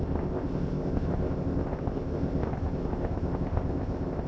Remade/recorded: remade